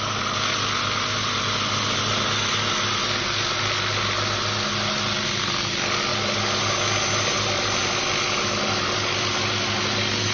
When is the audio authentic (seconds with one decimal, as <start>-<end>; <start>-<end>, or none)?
0.0-10.3